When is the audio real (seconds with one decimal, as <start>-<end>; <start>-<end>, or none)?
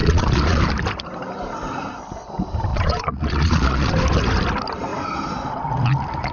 0.6-2.7; 3.9-6.3